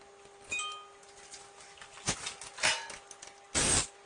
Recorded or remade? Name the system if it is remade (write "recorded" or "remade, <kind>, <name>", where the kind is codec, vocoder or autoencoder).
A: recorded